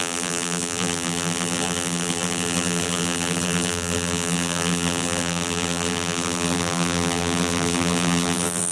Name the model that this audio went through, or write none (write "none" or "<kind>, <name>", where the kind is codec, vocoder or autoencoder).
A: vocoder, BigVGAN v2